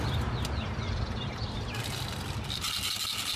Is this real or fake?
real